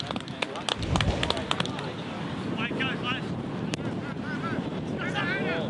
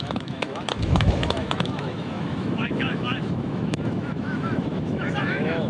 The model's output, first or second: second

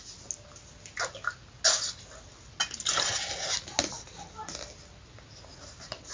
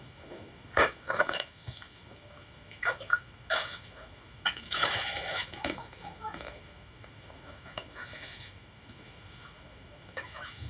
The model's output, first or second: second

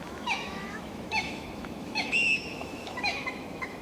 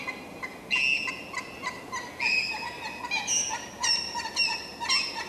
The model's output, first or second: first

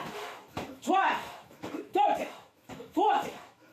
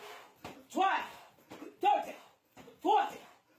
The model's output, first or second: first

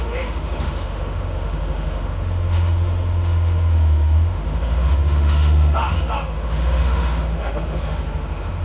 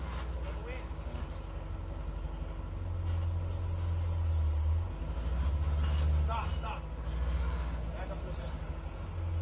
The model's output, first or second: first